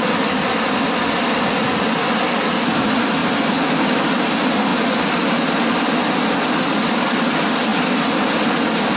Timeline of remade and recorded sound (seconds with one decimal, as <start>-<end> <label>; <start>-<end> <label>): 0.0-9.0 recorded